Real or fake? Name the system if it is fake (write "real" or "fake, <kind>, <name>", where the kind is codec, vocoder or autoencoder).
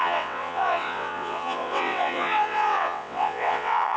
fake, vocoder, WaveNeXt